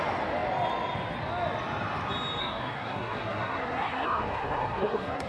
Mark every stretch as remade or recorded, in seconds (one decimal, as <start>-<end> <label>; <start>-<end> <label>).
0.0-2.4 recorded; 2.4-5.3 remade